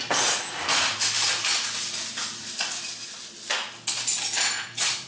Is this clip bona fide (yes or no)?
yes